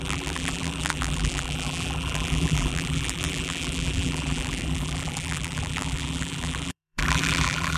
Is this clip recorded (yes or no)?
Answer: no